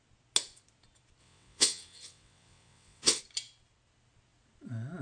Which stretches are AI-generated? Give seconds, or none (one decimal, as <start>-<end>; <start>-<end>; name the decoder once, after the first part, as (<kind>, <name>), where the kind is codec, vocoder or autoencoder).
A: 1.2-3.2 (vocoder, WaveNeXt)

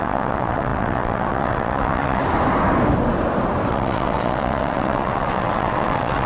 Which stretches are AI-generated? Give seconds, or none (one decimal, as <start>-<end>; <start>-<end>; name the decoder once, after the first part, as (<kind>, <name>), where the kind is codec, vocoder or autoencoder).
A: 0.0-2.2 (vocoder, WaveNeXt); 3.7-6.3

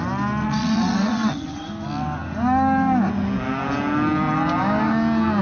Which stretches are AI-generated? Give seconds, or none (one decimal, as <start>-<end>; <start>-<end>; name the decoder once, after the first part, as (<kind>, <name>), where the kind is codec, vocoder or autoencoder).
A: 0.4-1.7 (vocoder, WaveNeXt)

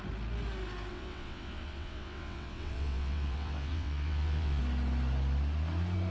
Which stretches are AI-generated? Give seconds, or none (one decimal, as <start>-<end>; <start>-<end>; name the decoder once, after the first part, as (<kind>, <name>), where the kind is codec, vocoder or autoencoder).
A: 0.9-4.6 (vocoder, WaveNeXt)

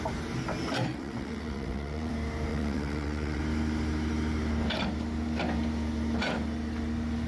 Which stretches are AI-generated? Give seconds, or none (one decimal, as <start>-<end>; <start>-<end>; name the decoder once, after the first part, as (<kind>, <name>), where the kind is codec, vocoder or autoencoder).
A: 0.9-2.1 (vocoder, WaveNeXt); 2.5-3.4